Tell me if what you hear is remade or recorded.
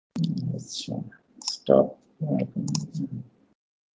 recorded